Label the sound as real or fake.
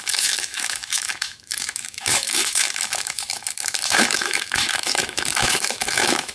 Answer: fake